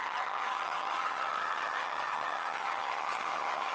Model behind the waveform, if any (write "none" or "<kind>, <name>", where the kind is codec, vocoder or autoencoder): vocoder, HiFi-GAN